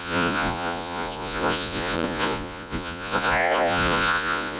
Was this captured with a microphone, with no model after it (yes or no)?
no